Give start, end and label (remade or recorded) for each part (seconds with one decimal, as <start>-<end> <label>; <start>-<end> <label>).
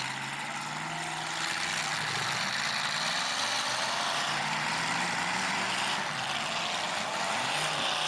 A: 0.0-1.9 recorded; 1.9-5.7 remade; 5.7-8.1 recorded